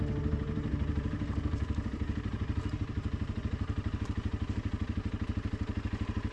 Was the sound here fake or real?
fake